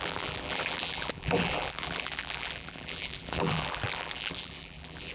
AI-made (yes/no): yes